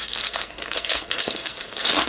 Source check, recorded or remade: remade